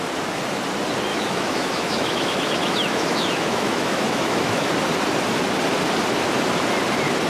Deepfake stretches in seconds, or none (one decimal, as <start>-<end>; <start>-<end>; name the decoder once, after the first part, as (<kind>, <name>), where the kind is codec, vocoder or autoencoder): 1.1-4.7 (autoencoder, DAC-VAE)